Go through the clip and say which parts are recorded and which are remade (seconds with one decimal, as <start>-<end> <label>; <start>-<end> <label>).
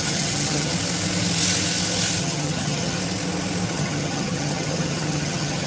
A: 0.0-0.7 remade; 0.7-2.2 recorded; 2.2-3.0 remade; 3.0-3.7 recorded; 3.7-5.7 remade